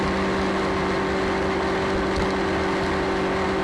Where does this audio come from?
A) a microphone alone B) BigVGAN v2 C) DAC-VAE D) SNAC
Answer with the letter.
A